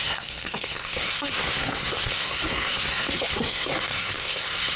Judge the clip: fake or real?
fake